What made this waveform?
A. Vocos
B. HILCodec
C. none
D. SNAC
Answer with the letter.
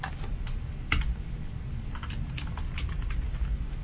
C